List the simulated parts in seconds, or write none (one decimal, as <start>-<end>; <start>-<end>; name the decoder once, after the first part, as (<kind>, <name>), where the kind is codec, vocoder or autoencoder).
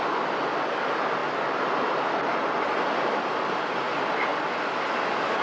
none